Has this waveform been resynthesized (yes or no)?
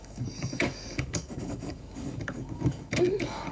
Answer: yes